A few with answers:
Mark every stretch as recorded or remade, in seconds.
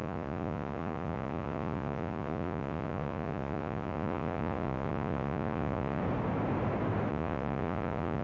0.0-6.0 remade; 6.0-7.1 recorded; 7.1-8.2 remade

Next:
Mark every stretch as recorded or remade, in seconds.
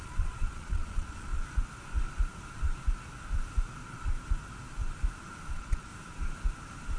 0.0-1.3 remade; 1.3-5.5 recorded; 5.5-5.9 remade; 5.9-7.0 recorded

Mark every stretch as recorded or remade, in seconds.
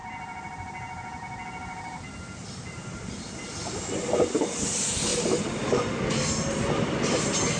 0.0-7.6 recorded